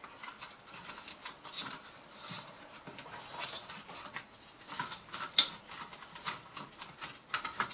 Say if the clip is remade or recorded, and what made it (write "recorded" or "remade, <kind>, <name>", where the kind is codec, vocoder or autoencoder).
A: recorded